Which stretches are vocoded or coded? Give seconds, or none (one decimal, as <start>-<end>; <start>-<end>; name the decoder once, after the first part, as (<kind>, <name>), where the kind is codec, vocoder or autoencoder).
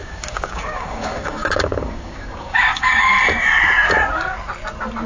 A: 0.0-3.1 (codec, DAC)